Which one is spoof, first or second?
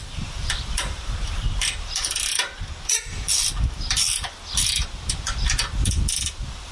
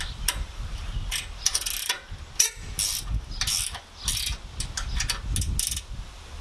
first